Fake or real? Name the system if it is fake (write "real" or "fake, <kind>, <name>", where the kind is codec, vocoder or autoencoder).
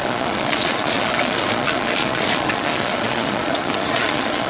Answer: fake, vocoder, Vocos